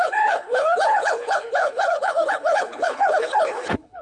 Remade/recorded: remade